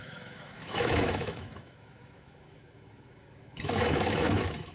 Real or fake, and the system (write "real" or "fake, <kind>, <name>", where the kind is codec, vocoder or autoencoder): fake, autoencoder, DAC-VAE